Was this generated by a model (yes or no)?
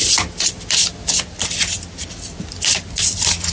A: yes